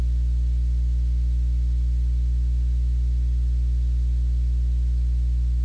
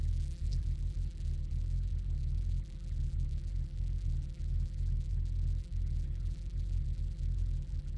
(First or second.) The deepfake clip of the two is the second